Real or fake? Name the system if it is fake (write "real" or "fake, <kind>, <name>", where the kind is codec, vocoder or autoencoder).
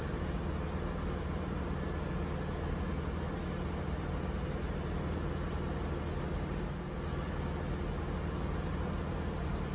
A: real